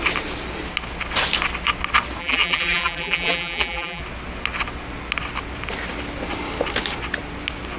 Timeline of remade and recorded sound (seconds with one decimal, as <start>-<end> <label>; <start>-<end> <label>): 0.0-2.2 recorded; 2.2-4.0 remade; 4.0-7.8 recorded